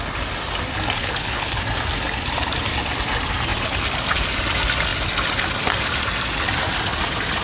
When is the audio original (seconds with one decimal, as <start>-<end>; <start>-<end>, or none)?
0.0-1.0; 1.6-7.4